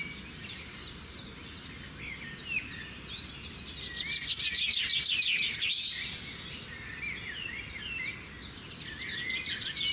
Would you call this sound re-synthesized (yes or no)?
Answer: no